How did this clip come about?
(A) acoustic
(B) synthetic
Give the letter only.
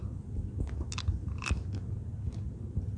A